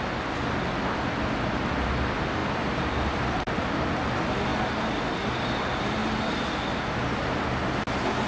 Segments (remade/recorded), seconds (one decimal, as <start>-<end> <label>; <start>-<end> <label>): 0.0-2.4 recorded; 2.4-3.1 remade; 3.1-8.3 recorded